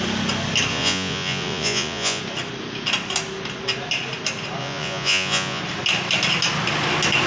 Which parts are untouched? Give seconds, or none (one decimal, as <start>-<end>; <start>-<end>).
0.0-0.7; 2.2-4.6; 5.6-7.3